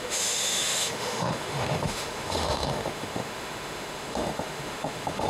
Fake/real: fake